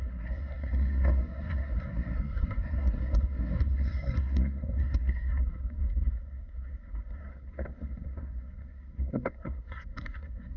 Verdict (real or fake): fake